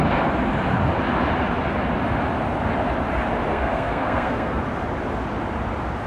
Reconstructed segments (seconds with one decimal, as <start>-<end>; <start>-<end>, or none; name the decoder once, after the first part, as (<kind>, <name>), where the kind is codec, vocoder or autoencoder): 3.5-4.6 (codec, SNAC)